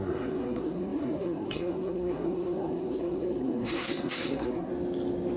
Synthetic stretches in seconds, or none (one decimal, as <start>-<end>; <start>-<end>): 0.0-4.7